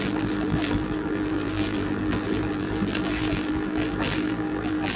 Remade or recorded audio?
remade